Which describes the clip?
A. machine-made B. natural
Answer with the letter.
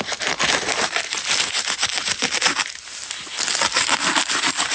B